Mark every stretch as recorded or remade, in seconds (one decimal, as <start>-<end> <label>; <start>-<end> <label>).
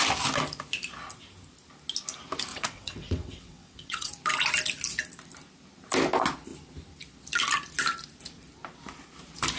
0.0-2.5 recorded; 2.5-4.1 remade; 4.1-9.6 recorded